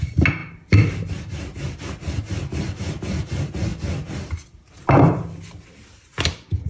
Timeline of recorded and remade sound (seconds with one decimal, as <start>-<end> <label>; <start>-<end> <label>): 0.0-6.7 recorded

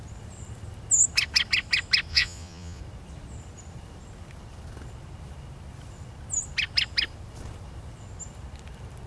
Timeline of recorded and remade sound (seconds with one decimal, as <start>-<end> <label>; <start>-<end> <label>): 0.0-2.1 recorded; 2.1-2.8 remade; 2.8-9.1 recorded

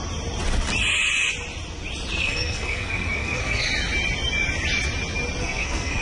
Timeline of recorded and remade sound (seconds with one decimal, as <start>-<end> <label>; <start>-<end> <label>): 0.0-2.2 recorded; 2.2-3.7 remade; 3.7-5.4 recorded; 5.4-6.0 remade

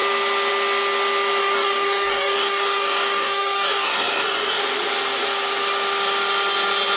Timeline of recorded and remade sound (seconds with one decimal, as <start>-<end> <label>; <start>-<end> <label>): 0.0-1.4 recorded; 1.4-4.6 remade; 4.6-7.0 recorded

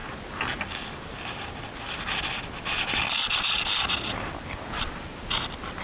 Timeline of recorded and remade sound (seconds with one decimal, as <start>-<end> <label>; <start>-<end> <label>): 0.0-5.8 recorded

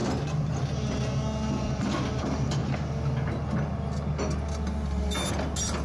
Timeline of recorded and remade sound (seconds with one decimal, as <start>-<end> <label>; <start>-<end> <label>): 0.0-5.8 recorded